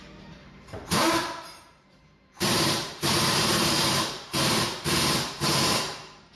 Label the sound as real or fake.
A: fake